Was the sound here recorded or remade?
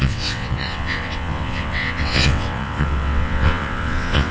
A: remade